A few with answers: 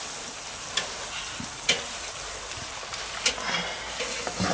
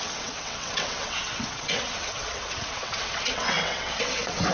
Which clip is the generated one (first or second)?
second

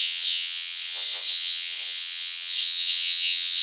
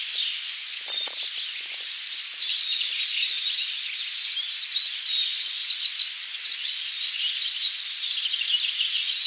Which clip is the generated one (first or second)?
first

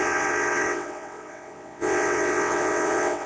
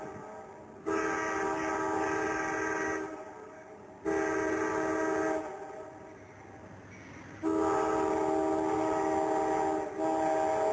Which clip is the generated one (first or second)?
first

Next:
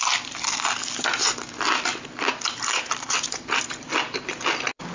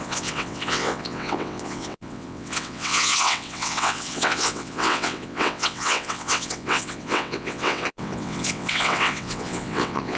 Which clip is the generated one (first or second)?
second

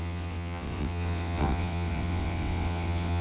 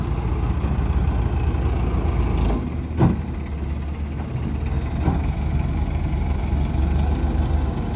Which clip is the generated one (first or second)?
first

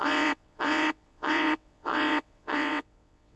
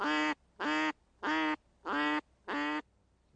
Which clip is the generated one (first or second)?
first